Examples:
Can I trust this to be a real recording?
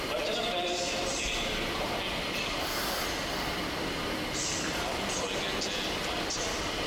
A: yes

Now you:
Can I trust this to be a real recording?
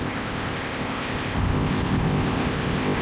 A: no